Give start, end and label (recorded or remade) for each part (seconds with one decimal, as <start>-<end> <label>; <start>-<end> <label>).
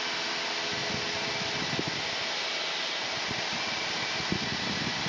0.0-5.1 recorded